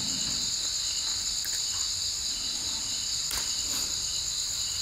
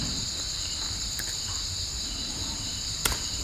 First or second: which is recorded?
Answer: first